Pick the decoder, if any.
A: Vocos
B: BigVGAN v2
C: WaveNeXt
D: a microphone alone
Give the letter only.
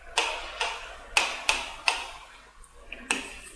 D